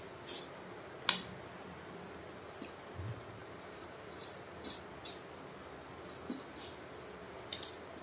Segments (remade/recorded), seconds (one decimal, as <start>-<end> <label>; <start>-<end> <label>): 0.0-3.4 recorded; 3.4-4.7 remade; 4.7-8.0 recorded